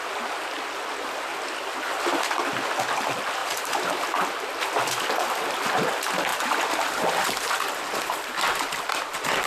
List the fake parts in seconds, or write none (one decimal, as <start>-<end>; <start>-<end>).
none